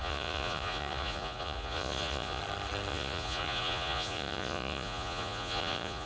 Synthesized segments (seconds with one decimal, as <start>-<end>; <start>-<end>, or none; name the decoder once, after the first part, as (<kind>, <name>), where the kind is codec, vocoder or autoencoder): 0.0-2.4 (vocoder, Vocos); 2.9-6.1